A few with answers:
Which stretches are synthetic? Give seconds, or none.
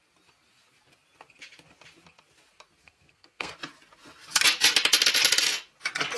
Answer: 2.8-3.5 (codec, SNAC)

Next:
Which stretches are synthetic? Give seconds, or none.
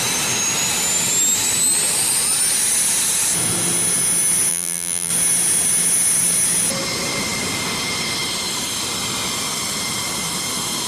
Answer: 4.5-5.1 (vocoder, BigVGAN v2)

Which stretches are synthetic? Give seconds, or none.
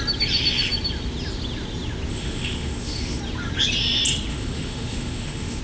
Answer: 2.1-3.2 (autoencoder, DAC-VAE); 4.3-5.6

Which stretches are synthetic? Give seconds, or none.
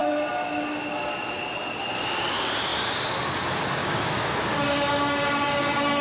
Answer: 3.8-6.0 (codec, DAC)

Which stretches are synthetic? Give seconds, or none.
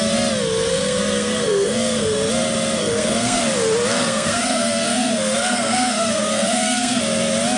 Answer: 0.7-2.3 (codec, SNAC); 2.8-3.4; 3.9-7.0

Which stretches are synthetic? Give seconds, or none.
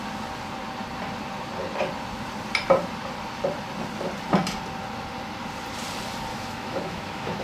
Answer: 6.3-7.4 (autoencoder, DAC-VAE)